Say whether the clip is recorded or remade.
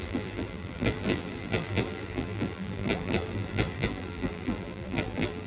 remade